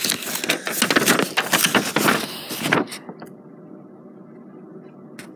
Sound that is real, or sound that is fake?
real